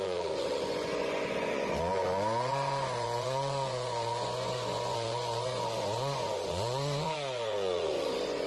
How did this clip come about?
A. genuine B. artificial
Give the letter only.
B